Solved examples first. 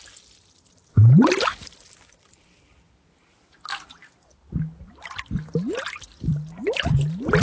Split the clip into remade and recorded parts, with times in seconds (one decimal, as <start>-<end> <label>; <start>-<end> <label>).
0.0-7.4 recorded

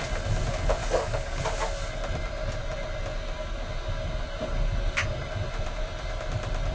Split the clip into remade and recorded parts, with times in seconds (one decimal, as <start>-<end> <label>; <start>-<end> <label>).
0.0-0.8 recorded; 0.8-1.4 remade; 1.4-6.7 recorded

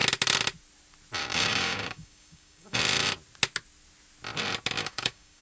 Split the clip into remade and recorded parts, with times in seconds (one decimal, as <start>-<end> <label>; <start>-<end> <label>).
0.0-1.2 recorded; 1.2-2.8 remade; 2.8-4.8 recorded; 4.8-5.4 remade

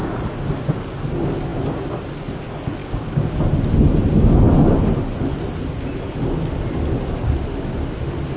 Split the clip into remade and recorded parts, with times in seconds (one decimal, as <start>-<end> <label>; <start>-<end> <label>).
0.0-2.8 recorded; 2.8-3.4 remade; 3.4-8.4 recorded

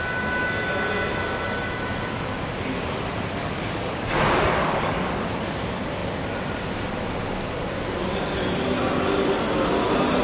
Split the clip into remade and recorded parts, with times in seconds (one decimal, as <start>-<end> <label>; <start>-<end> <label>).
0.0-3.4 recorded; 3.4-5.3 remade; 5.3-10.2 recorded